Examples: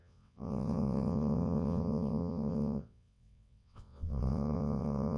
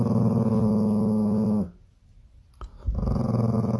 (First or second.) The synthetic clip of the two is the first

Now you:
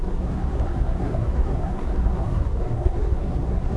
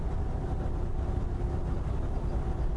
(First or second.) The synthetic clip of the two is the first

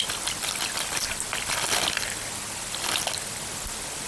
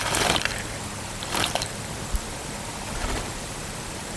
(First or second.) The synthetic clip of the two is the second